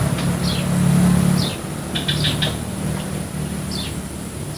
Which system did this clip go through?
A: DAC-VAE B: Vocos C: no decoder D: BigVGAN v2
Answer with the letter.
C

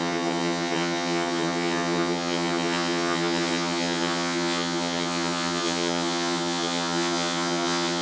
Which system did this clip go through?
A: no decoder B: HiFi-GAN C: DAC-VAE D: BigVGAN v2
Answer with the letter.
B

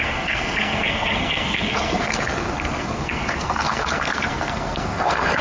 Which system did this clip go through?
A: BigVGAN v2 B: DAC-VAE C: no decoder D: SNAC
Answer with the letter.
D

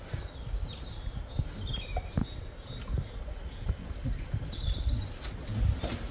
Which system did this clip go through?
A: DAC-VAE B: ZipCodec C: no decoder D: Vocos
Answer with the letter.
C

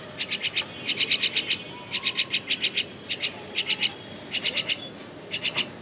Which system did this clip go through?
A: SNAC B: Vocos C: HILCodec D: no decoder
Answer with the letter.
D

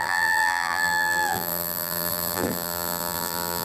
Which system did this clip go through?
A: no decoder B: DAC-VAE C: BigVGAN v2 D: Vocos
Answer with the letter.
C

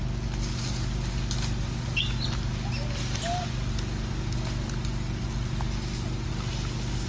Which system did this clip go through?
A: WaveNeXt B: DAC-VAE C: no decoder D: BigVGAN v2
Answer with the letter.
C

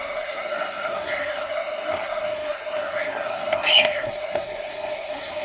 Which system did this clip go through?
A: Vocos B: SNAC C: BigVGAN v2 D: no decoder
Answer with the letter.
B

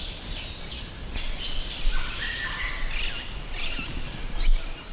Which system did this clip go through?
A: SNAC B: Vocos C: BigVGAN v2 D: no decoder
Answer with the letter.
D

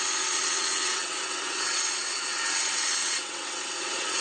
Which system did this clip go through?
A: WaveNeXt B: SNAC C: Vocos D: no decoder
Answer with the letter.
A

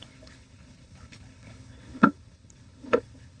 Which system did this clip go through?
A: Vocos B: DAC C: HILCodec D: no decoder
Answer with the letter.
C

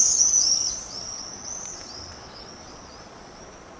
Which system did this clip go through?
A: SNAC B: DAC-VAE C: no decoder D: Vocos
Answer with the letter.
D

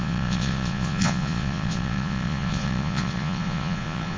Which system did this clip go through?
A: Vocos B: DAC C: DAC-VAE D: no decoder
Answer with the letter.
A